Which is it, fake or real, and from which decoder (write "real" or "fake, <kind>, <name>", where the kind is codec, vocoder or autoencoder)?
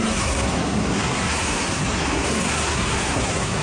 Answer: fake, codec, SNAC